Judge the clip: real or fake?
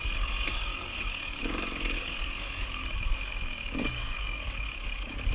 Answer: fake